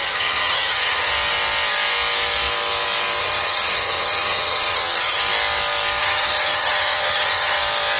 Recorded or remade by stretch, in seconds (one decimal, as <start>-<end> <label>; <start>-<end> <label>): 0.0-1.1 remade; 1.1-3.2 recorded; 3.2-5.2 remade; 5.2-6.0 recorded; 6.0-7.6 remade; 7.6-8.0 recorded